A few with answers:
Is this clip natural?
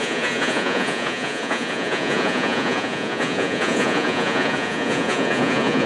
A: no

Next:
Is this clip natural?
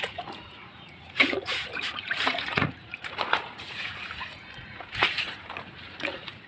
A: no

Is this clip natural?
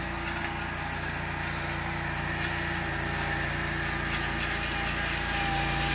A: yes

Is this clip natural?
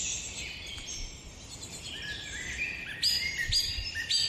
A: yes